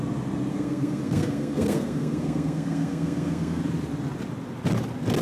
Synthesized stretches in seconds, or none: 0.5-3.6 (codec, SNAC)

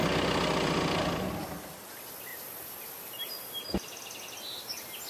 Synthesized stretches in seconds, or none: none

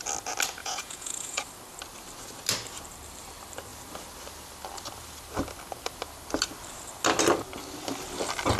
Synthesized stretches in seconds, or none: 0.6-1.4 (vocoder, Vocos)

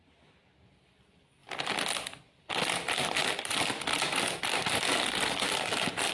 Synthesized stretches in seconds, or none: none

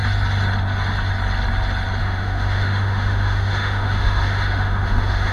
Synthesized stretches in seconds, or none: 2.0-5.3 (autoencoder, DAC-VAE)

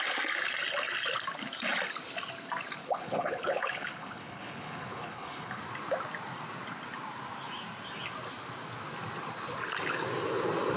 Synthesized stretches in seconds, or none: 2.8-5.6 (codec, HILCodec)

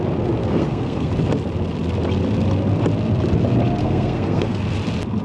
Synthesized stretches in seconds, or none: 0.4-1.1 (codec, SNAC); 3.8-4.6